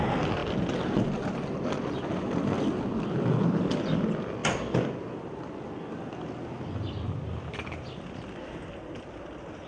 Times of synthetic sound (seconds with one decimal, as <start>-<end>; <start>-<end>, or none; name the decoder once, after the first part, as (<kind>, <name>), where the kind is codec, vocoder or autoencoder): none